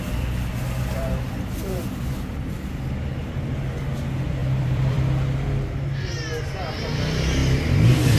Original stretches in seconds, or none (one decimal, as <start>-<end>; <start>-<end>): 0.0-4.4; 5.0-8.2